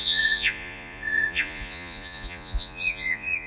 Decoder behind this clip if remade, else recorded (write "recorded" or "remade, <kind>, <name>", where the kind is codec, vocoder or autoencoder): remade, vocoder, Vocos